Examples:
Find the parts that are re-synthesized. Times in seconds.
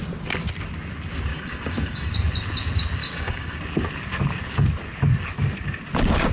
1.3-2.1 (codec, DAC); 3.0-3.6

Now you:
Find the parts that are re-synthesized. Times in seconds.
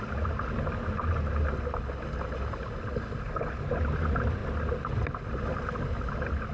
none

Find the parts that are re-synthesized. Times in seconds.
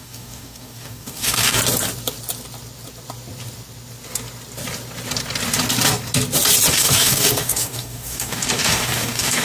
0.0-1.6 (codec, DAC); 6.7-9.4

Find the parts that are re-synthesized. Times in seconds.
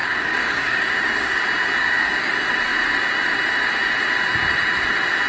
0.0-1.4 (codec, DAC); 1.8-2.3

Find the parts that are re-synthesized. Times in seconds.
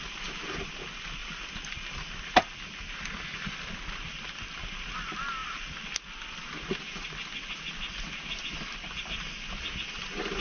none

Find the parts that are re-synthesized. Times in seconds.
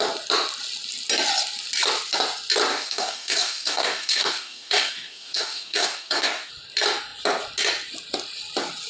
2.7-6.5 (codec, DAC)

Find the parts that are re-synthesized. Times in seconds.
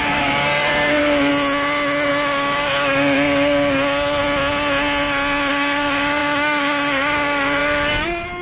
0.0-1.3 (codec, DAC); 2.1-4.2; 5.5-8.4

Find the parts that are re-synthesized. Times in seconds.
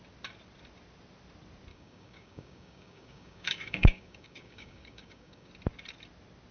1.7-5.5 (codec, DAC)